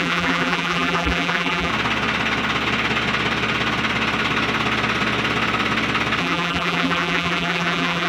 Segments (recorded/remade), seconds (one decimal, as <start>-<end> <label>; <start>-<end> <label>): 0.0-1.7 remade; 1.7-6.2 recorded; 6.2-8.1 remade